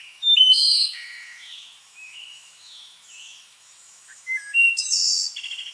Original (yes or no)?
no